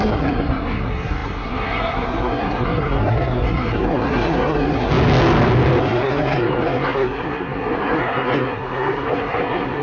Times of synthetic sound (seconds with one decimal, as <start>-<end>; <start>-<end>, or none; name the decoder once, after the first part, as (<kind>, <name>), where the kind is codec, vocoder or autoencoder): 0.0-4.9 (codec, SNAC); 5.8-9.8